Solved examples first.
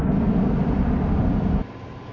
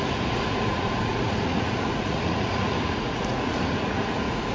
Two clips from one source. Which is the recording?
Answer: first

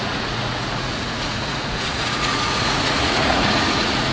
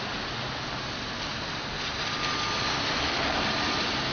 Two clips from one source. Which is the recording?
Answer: second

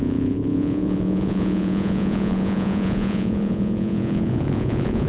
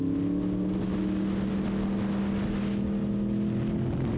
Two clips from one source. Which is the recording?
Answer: second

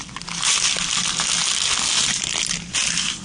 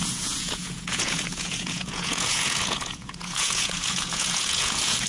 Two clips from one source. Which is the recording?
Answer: first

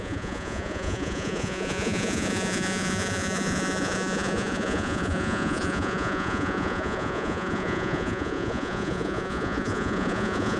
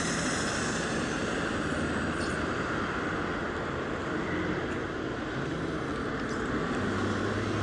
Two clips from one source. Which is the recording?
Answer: second